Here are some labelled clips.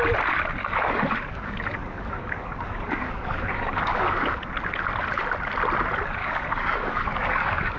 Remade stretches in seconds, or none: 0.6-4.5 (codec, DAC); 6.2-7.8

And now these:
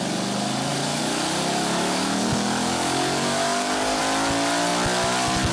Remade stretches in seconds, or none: 0.7-4.0 (codec, DAC)

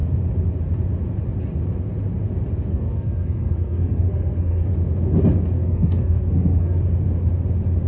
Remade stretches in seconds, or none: 2.7-4.7 (codec, SNAC); 5.6-6.8

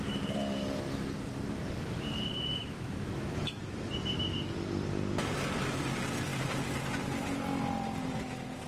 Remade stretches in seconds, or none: 2.3-3.9 (autoencoder, DAC-VAE)